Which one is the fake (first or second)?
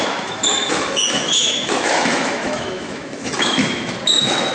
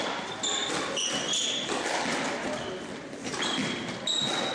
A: first